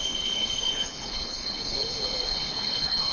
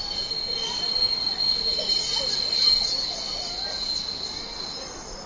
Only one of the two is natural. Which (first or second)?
second